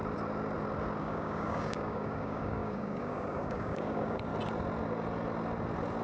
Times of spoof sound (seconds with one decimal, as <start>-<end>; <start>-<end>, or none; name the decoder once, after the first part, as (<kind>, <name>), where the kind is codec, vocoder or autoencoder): 1.0-4.3 (codec, DAC)